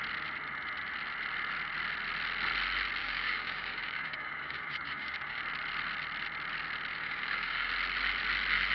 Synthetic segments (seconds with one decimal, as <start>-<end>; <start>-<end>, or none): 3.0-5.4; 6.9-7.7